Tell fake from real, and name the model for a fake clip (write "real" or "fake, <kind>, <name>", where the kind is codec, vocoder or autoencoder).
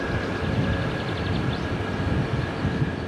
real